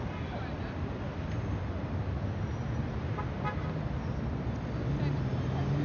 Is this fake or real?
real